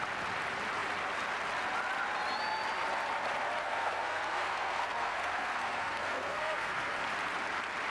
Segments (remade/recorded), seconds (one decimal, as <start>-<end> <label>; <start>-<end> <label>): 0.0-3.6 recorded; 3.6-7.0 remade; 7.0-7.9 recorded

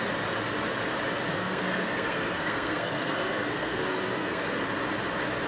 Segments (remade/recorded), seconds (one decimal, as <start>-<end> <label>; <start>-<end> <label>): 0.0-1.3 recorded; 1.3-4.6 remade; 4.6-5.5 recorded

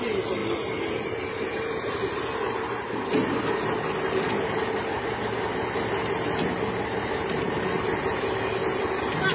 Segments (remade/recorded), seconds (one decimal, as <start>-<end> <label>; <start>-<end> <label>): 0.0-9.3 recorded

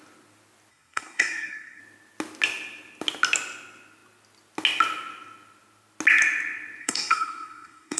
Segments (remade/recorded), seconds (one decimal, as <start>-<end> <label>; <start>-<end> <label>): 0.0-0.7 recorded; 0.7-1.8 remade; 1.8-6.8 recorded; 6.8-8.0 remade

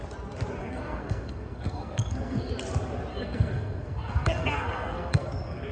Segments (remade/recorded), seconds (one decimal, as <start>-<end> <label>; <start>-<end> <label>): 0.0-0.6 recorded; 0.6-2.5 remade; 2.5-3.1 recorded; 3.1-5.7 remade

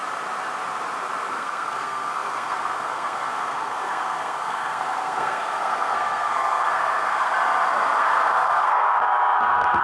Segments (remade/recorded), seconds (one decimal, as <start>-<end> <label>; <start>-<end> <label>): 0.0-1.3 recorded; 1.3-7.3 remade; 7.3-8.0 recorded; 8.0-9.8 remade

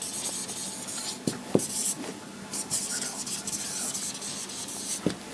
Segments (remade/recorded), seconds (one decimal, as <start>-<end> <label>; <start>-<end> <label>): 0.0-5.3 recorded

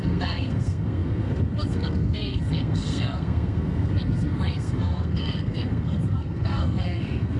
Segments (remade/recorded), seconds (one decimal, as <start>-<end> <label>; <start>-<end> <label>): 0.0-7.4 remade